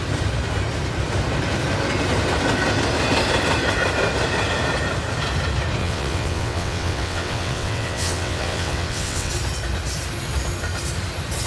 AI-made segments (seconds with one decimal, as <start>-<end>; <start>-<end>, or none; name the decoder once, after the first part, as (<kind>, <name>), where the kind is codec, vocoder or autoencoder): 5.8-9.3 (vocoder, WaveNeXt)